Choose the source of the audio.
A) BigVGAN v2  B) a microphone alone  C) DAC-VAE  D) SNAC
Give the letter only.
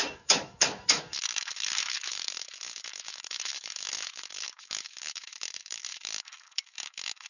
C